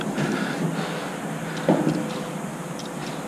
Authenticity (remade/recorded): recorded